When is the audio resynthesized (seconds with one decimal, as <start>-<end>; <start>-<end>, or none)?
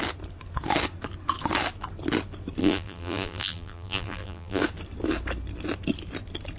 2.6-4.6